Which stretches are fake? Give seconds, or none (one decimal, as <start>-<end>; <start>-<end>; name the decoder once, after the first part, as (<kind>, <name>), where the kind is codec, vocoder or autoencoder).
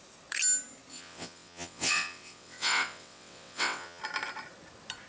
0.9-4.0 (vocoder, WaveNeXt)